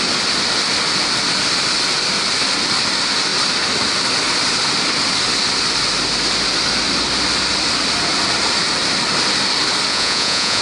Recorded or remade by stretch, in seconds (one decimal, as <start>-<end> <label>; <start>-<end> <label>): 0.0-9.9 recorded; 9.9-10.6 remade